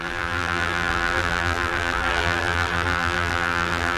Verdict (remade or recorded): remade